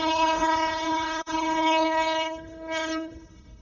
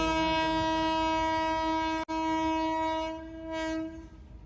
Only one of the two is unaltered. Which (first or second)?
second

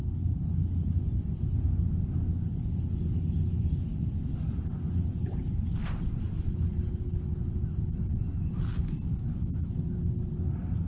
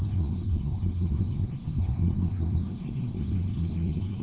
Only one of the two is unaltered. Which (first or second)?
first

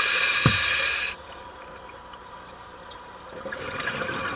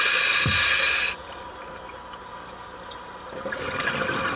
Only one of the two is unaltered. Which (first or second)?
second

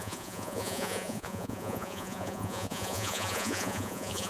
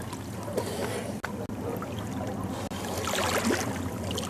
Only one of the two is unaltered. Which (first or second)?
second